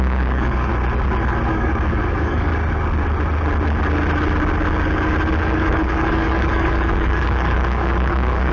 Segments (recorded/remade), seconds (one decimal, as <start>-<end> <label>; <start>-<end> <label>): 0.0-0.7 remade; 0.7-1.5 recorded; 1.5-2.5 remade; 2.5-5.4 recorded; 5.4-8.5 remade